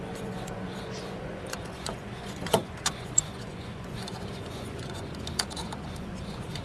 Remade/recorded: remade